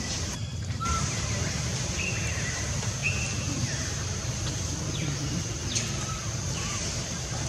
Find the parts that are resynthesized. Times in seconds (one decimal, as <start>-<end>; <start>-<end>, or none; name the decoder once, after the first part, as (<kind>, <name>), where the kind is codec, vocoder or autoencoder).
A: 0.0-3.0 (vocoder, BigVGAN v2)